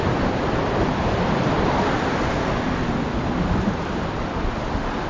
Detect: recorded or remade recorded